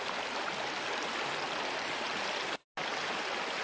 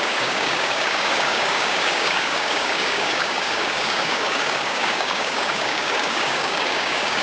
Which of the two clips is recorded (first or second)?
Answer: first